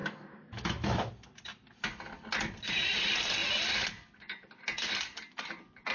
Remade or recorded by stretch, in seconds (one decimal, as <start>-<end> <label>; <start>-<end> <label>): 0.0-1.1 remade; 1.1-5.9 recorded

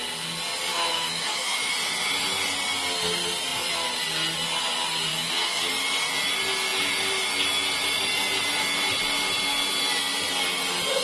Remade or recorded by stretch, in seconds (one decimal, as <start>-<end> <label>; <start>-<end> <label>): 0.0-0.7 recorded; 0.7-1.7 remade; 1.7-5.1 recorded; 5.1-5.7 remade; 5.7-11.0 recorded